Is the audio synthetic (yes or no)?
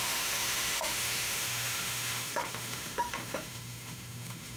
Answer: yes